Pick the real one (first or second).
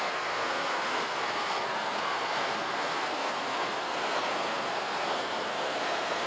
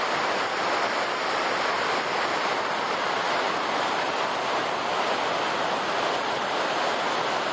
second